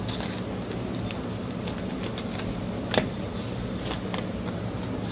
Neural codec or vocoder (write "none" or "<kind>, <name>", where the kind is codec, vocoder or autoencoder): none